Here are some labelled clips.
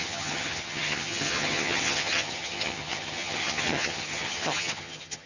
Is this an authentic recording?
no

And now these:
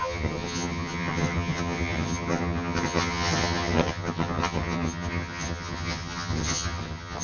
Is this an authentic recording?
no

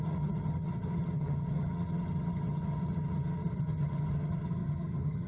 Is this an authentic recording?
no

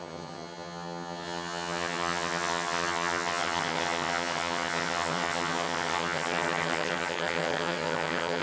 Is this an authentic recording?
no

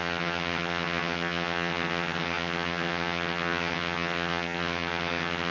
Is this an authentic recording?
no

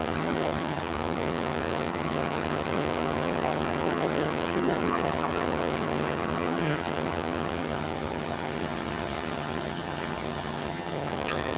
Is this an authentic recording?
no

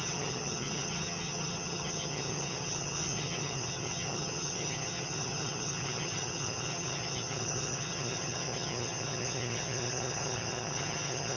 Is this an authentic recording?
no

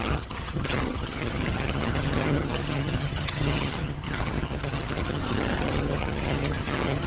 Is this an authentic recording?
no